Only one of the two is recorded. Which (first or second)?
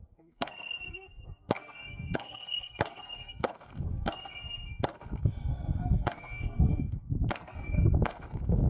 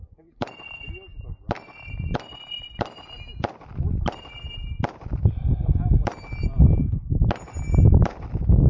second